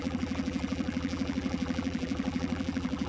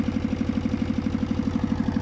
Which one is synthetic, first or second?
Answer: first